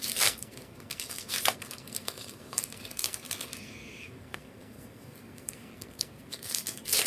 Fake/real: fake